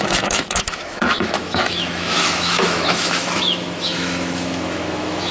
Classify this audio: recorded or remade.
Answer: remade